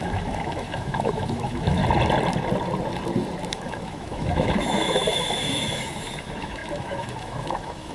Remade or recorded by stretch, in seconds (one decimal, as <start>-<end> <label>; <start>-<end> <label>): 0.0-1.8 remade; 1.8-3.5 recorded; 3.5-7.9 remade